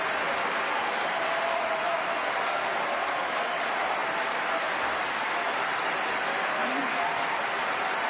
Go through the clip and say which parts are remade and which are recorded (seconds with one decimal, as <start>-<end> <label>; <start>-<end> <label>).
0.0-4.0 remade; 4.0-4.8 recorded; 4.8-8.1 remade